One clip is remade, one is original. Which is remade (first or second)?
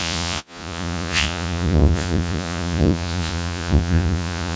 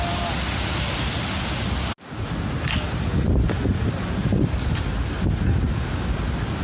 first